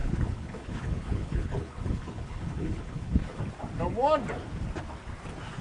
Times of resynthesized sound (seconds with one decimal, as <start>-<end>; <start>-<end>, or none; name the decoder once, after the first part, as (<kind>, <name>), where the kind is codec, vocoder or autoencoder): 0.0-3.4 (codec, HILCodec)